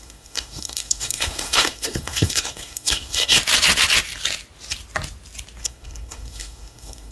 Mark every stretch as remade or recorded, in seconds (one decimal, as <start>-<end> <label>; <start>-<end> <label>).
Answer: 0.0-3.4 remade; 3.4-5.6 recorded; 5.6-7.1 remade